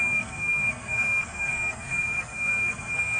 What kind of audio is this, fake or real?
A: fake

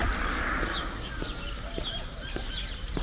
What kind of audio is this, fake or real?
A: real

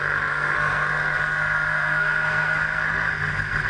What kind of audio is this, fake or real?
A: fake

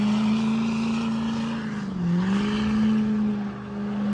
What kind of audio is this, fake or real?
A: real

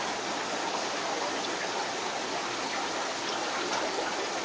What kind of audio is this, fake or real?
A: real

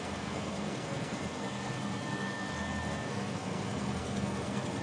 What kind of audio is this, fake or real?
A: fake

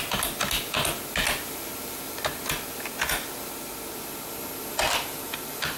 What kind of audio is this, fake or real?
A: real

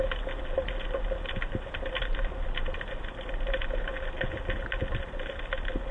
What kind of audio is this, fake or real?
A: real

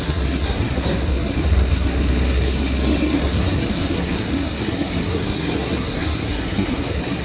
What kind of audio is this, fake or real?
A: fake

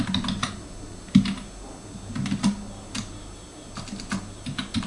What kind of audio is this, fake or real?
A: real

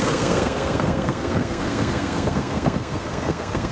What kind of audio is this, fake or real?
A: fake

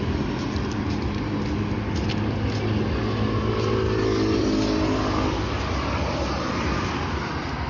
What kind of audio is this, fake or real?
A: real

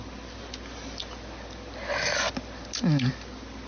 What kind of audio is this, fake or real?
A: real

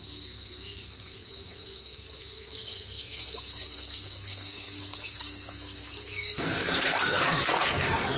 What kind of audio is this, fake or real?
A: fake